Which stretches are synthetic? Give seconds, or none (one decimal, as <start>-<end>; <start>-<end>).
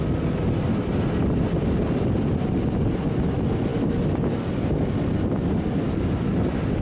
3.7-5.4